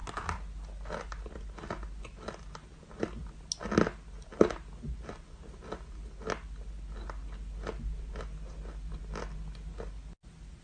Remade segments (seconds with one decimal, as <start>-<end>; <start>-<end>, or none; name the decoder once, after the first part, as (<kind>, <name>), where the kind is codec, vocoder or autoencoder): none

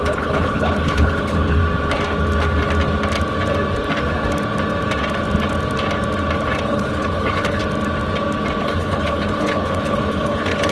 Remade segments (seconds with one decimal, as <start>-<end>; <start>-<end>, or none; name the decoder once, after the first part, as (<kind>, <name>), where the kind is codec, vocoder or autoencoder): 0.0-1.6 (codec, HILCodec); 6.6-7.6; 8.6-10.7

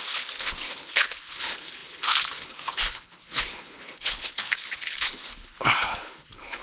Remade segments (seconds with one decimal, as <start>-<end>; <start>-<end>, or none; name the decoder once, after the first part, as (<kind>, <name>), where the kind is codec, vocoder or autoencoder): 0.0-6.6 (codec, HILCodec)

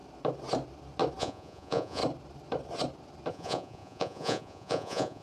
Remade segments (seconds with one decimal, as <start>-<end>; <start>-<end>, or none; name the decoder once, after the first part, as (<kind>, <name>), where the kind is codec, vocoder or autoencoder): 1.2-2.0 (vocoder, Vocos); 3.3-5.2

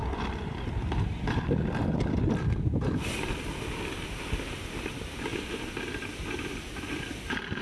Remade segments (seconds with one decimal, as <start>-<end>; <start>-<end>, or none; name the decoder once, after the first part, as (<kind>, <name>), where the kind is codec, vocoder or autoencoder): 0.0-0.8 (vocoder, BigVGAN v2)

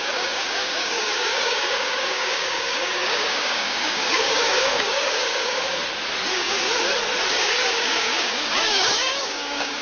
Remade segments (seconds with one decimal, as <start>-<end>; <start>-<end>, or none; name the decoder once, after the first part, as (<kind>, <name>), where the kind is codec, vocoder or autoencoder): 0.0-5.8 (codec, DAC); 6.3-6.7; 7.3-9.8

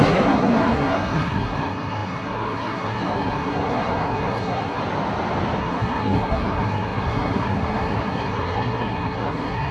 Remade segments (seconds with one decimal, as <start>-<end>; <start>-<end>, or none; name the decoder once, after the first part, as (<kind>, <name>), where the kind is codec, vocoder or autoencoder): 0.0-4.8 (codec, SNAC); 5.6-9.7